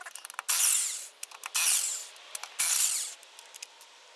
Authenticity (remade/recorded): recorded